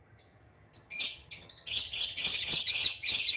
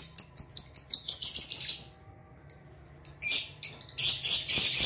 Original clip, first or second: second